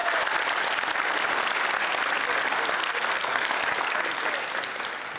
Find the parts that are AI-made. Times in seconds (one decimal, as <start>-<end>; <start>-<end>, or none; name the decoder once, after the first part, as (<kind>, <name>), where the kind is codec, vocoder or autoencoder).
2.8-3.5 (codec, SNAC)